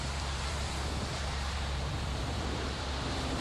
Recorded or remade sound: remade